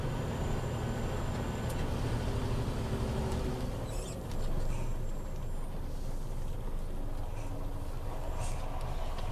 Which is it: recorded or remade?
recorded